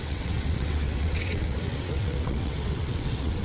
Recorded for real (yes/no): no